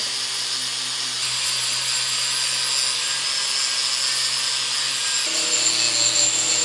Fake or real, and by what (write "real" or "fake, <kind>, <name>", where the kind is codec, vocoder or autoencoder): real